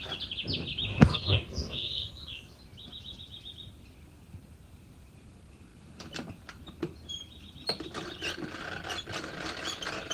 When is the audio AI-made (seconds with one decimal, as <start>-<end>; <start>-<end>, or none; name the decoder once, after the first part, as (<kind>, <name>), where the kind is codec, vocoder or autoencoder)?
0.9-2.6 (codec, SNAC)